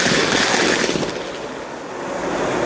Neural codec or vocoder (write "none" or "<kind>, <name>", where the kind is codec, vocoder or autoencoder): none